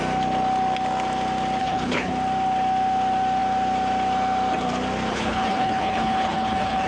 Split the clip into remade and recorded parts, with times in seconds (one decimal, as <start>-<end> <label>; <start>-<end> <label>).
0.0-1.6 recorded; 1.6-2.1 remade; 2.1-5.1 recorded; 5.1-6.9 remade